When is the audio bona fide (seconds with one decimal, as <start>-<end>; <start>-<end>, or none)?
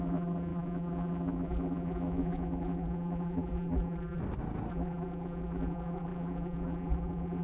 4.2-4.7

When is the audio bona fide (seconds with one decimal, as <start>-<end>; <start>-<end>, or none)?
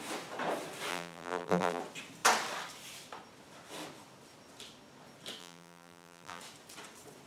0.0-0.9; 1.8-5.4; 6.4-7.3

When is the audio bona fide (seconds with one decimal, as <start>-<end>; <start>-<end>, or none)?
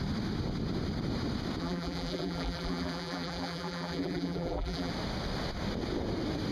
0.0-1.6; 4.9-6.5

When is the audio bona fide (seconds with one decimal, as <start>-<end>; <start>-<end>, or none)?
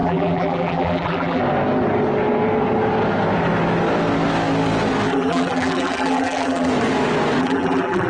1.4-5.1; 6.7-7.4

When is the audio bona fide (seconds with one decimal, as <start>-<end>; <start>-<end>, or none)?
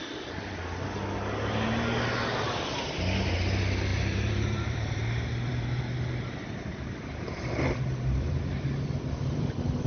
0.0-3.9; 5.8-6.7; 8.4-9.9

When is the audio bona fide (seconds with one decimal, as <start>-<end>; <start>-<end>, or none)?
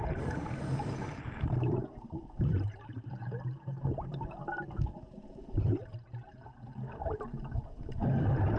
4.1-6.7